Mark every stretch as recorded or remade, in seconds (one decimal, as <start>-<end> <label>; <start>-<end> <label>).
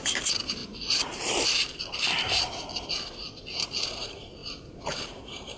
0.0-0.6 remade; 0.6-4.0 recorded; 4.0-4.4 remade; 4.4-4.9 recorded; 4.9-5.6 remade